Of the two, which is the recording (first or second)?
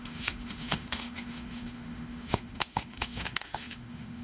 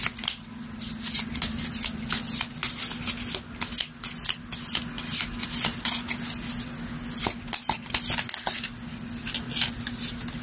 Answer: second